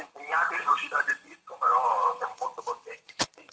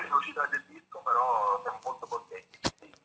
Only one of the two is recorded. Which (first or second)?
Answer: second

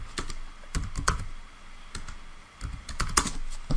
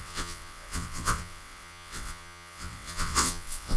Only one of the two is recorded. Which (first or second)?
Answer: first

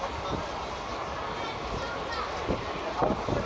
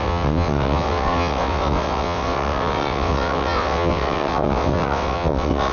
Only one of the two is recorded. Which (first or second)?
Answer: first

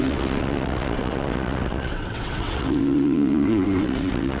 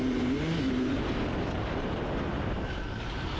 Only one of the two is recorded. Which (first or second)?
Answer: second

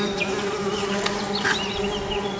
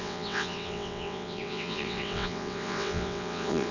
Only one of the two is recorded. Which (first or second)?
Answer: first